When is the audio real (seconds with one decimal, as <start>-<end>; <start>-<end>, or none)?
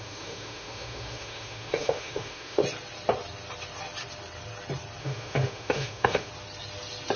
2.6-5.0; 6.3-7.2